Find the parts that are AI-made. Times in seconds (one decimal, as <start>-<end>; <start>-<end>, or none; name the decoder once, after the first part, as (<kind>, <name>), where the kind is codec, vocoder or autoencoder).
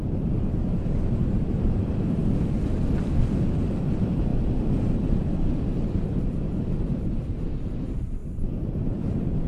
0.0-2.2 (vocoder, BigVGAN v2); 2.9-4.3; 5.9-8.2; 8.8-9.5